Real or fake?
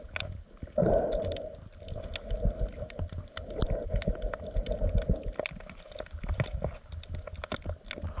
real